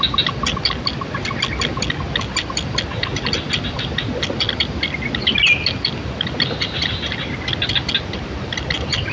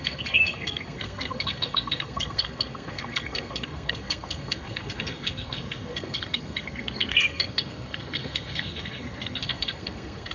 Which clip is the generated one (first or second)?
second